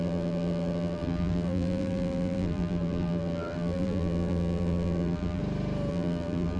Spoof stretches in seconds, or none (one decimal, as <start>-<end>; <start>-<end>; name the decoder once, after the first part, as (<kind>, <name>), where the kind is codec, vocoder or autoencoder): 0.0-5.4 (vocoder, BigVGAN v2); 5.9-6.6

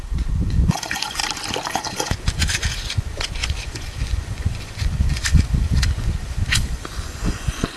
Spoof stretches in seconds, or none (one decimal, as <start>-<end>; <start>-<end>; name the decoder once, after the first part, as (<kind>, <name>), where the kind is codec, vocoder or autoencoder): 0.0-1.2 (vocoder, Vocos); 1.7-7.8

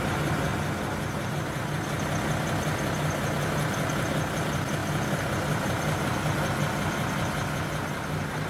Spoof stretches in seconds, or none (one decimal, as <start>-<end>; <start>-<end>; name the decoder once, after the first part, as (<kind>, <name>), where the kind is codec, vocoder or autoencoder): 4.8-8.5 (vocoder, BigVGAN v2)

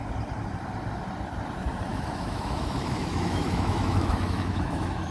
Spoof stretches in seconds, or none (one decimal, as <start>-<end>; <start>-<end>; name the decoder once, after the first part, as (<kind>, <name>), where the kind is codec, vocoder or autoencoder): 1.9-5.1 (autoencoder, DAC-VAE)

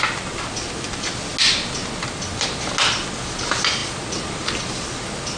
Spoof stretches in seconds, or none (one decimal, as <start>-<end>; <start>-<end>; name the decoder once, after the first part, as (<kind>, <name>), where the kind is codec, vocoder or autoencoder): none